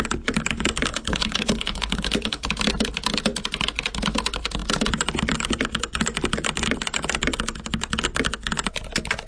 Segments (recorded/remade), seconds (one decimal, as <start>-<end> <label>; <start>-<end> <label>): 0.0-0.9 recorded; 0.9-2.5 remade; 2.5-9.3 recorded